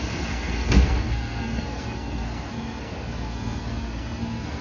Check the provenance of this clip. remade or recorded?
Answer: remade